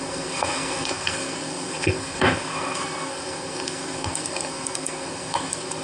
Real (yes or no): no